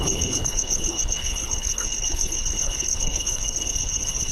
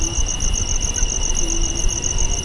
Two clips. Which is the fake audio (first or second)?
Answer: first